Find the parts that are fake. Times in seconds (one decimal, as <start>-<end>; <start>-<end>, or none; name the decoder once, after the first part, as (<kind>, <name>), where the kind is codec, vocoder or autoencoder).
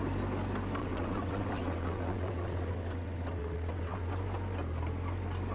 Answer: 0.8-4.1 (vocoder, WaveNeXt)